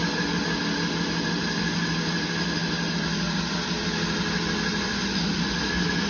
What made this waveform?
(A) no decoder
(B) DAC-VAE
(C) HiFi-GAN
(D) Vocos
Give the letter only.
A